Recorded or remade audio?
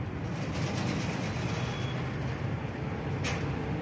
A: recorded